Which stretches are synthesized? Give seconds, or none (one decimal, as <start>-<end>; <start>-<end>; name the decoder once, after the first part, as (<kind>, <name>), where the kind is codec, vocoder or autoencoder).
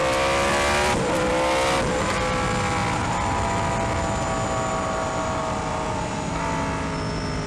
none